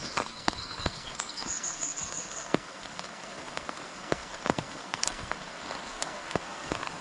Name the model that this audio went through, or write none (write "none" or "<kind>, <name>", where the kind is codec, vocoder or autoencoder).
codec, SNAC